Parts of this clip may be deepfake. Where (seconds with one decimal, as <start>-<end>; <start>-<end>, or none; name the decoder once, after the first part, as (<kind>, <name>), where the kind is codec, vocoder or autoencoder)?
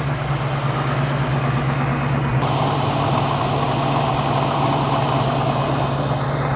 none